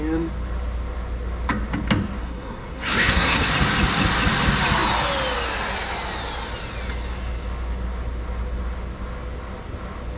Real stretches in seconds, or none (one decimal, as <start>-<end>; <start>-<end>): 0.0-2.2; 3.5-10.2